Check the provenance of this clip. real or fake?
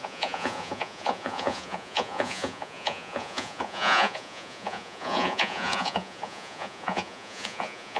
fake